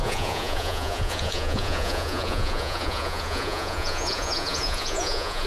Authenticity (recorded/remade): remade